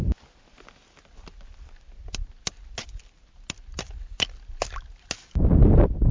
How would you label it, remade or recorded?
recorded